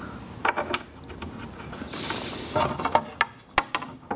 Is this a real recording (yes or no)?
yes